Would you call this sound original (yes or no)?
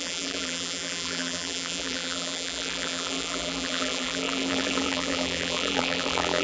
no